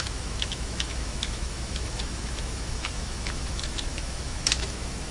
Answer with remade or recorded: remade